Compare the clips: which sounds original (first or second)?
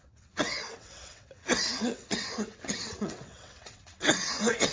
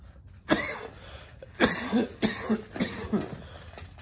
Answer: second